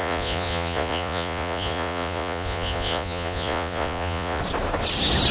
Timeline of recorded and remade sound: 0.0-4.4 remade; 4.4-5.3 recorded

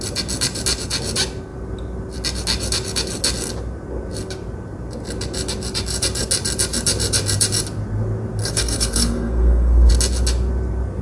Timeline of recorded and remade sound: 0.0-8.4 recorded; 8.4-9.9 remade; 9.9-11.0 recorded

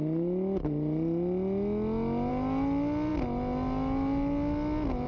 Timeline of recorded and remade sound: 0.0-5.1 recorded